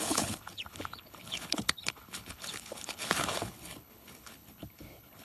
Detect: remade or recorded remade